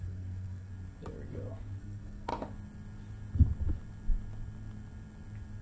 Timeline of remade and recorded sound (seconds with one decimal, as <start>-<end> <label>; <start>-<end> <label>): 0.0-0.7 remade; 0.7-1.8 recorded; 1.8-2.3 remade; 2.3-5.6 recorded